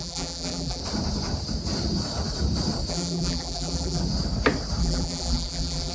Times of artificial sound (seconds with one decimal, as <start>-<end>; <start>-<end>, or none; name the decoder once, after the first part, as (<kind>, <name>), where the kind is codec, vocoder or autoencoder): 0.0-0.8 (vocoder, BigVGAN v2); 2.9-4.0; 4.8-5.9